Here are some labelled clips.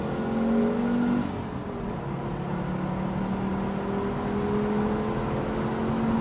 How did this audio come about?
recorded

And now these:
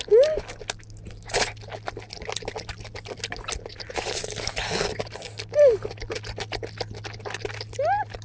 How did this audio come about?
recorded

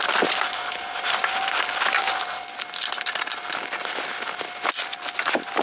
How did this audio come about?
recorded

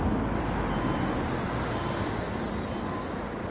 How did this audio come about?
recorded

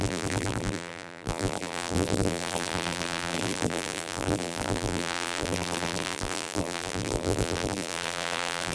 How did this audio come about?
remade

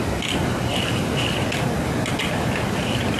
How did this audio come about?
recorded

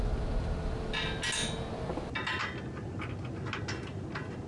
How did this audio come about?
recorded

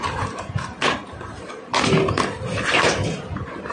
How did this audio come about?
recorded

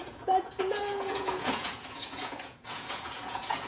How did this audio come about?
remade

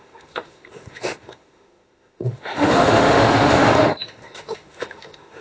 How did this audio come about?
remade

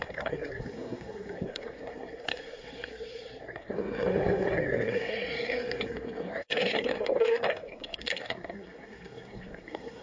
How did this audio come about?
remade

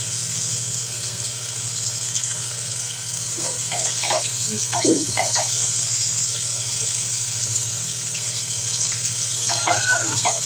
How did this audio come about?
remade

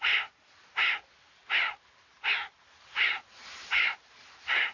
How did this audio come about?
recorded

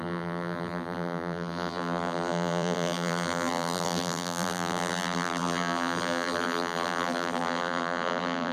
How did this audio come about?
remade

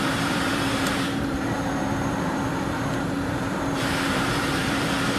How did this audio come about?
remade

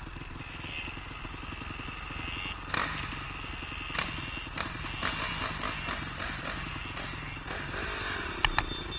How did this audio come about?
recorded